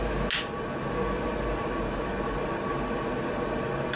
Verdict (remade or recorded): recorded